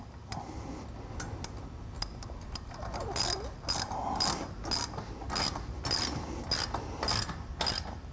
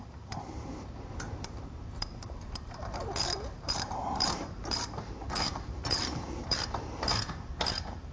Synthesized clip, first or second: second